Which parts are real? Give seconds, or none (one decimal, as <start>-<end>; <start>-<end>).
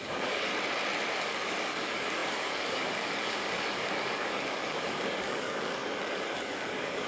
0.5-1.2